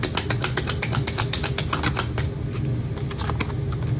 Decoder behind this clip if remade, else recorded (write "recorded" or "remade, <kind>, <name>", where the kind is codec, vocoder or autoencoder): recorded